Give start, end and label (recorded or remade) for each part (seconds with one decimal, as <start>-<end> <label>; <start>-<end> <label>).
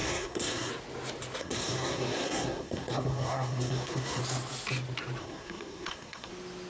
0.0-0.7 remade; 0.7-1.4 recorded; 1.4-4.2 remade; 4.2-5.2 recorded; 5.2-6.3 remade; 6.3-6.7 recorded